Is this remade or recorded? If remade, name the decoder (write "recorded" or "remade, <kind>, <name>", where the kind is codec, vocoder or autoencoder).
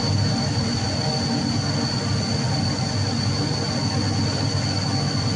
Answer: recorded